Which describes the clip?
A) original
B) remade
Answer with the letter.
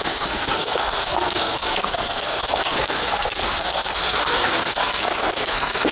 B